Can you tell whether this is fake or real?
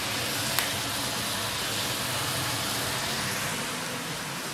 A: real